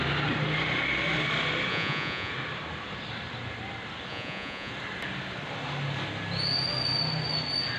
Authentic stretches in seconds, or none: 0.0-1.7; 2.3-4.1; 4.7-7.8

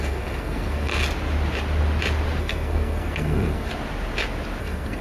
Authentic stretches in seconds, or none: 0.9-2.4; 3.7-4.6